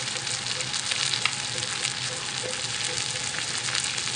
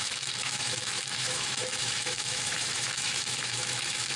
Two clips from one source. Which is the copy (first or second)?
second